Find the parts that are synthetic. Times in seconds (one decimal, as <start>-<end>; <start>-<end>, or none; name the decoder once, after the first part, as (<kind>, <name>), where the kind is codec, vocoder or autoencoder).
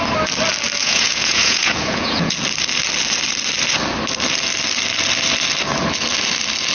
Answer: 0.8-2.3 (vocoder, Vocos)